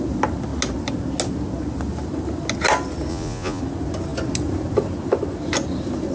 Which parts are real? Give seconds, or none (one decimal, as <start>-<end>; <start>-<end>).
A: 0.0-3.1; 3.6-6.1